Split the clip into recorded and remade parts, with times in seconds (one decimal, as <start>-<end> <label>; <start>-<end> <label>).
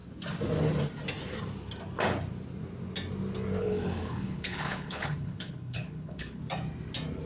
0.0-3.6 recorded; 3.6-6.4 remade; 6.4-7.3 recorded